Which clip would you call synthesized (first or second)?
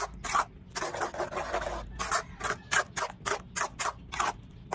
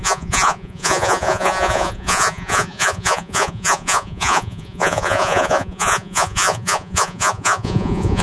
second